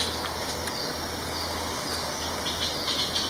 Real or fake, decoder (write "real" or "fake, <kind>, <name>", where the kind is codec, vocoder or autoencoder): real